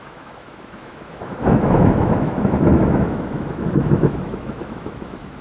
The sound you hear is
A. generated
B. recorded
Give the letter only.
A